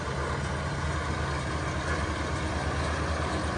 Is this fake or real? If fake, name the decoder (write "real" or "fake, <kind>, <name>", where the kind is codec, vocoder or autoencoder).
real